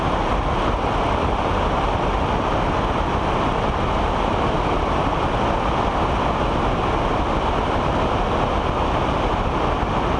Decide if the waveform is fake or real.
real